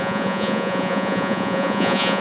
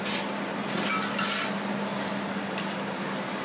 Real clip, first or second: second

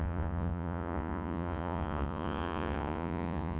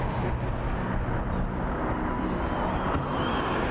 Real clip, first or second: second